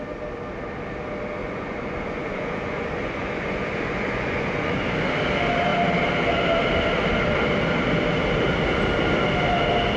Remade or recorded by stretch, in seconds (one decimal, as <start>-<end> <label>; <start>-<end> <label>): 0.0-1.4 recorded; 1.4-4.8 remade; 4.8-10.0 recorded